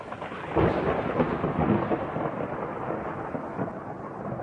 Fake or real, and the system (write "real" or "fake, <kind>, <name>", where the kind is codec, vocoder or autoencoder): real